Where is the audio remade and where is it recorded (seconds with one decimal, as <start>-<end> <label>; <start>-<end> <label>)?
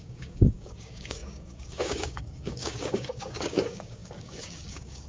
0.0-5.1 remade